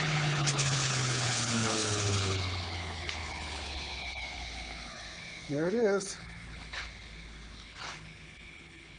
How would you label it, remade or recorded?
remade